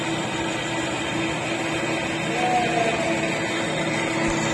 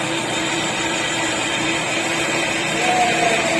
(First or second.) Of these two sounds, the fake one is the second